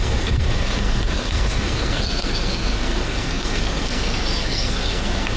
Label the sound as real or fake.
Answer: fake